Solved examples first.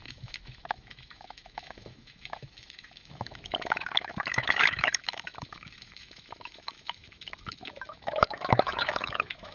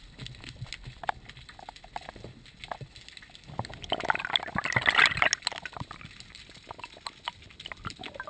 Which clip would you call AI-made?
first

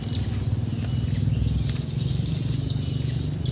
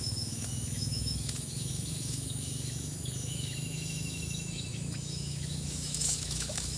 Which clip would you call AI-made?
second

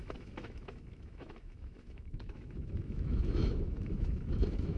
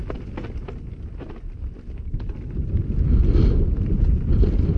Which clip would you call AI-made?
first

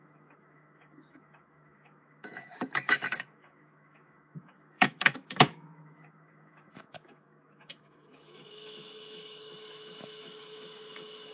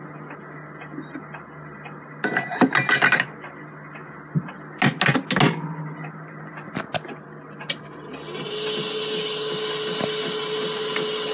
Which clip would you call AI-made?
first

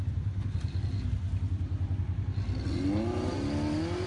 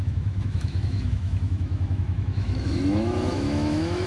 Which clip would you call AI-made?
second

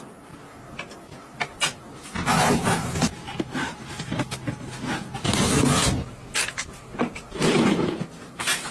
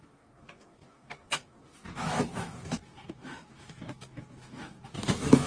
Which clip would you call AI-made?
second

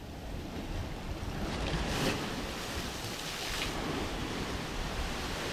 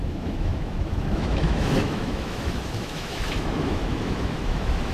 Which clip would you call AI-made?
second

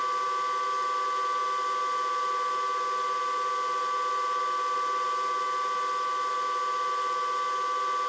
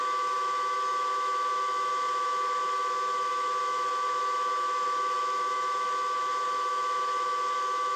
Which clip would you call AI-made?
second